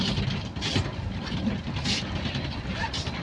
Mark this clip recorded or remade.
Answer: recorded